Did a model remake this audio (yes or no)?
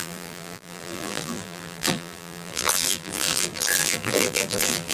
yes